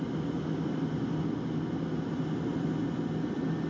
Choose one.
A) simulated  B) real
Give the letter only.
B